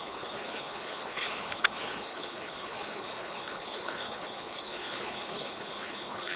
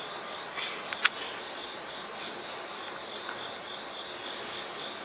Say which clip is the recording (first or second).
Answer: second